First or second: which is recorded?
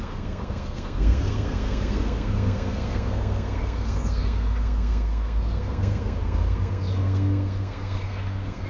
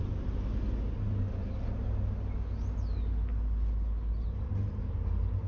second